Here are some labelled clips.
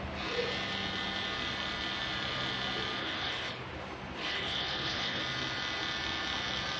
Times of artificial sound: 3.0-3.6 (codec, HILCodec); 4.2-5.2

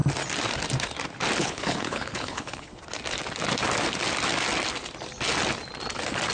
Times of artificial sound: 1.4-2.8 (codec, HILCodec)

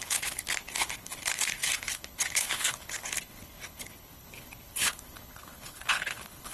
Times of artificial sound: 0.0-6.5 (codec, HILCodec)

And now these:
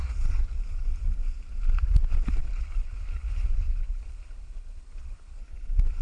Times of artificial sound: 2.4-5.4 (codec, HILCodec)

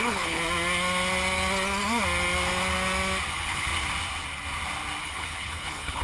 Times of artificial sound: 0.0-0.4 (codec, HILCodec); 3.3-3.7; 5.0-6.0

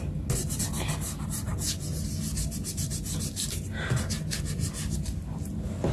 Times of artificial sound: none

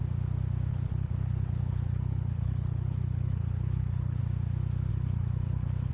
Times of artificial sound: 0.7-4.2 (codec, HILCodec); 4.9-5.9

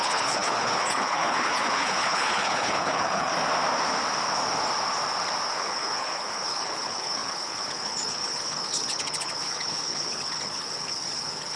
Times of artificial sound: 0.0-3.3 (codec, HILCodec); 5.5-11.6